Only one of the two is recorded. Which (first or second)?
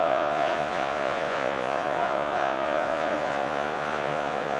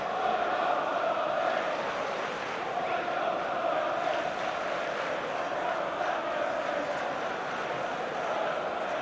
second